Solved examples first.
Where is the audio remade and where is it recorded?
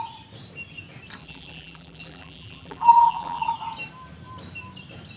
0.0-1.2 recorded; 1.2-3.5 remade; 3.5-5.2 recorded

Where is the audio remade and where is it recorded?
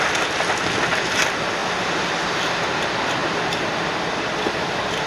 0.0-1.6 recorded; 1.6-2.2 remade; 2.2-5.1 recorded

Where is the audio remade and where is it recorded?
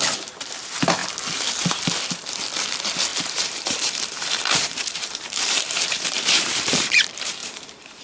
0.0-3.1 recorded; 3.1-7.0 remade; 7.0-7.4 recorded; 7.4-8.0 remade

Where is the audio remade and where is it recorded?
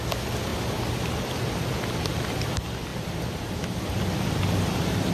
0.0-0.5 recorded; 0.5-2.5 remade; 2.5-2.9 recorded; 2.9-5.1 remade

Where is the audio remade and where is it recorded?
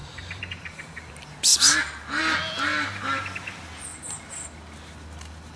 0.0-1.1 remade; 1.1-5.6 recorded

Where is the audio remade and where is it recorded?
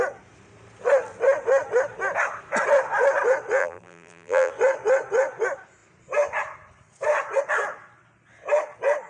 0.0-3.6 recorded; 3.6-4.5 remade; 4.5-9.1 recorded